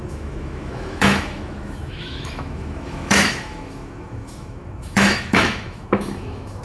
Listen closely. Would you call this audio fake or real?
fake